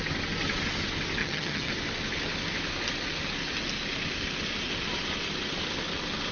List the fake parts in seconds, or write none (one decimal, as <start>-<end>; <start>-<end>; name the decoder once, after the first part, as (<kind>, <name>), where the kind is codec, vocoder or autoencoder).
1.2-1.7 (vocoder, HiFi-GAN)